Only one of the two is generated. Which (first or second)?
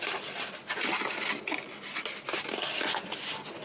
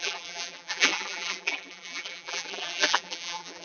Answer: second